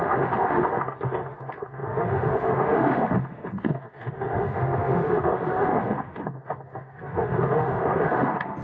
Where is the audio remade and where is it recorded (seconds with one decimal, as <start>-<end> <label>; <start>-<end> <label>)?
0.0-8.6 remade